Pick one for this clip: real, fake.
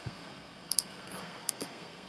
fake